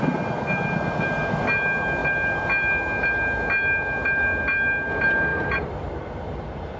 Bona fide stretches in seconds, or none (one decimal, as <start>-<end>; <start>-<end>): 0.0-5.3